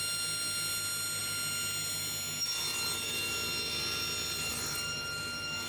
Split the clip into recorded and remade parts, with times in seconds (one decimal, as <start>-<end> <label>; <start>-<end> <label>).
0.0-4.5 recorded; 4.5-5.1 remade; 5.1-5.7 recorded